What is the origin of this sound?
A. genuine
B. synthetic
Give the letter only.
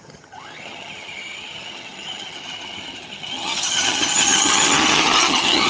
B